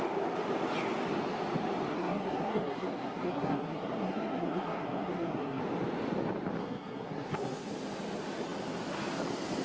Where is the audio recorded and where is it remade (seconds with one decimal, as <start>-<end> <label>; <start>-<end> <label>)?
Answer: 0.0-1.9 recorded; 1.9-5.6 remade; 5.6-6.6 recorded; 6.6-7.7 remade; 7.7-9.6 recorded